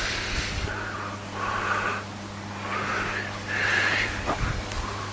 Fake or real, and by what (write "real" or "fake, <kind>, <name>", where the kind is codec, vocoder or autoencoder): real